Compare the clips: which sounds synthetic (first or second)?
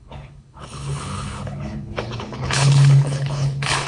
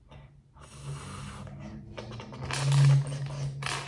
first